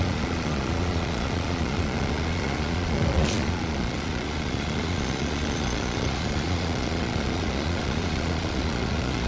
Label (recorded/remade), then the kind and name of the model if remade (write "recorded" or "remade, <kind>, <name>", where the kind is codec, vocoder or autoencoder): remade, vocoder, Vocos